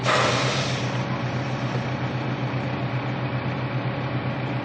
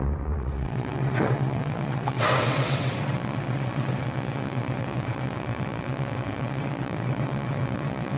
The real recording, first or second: first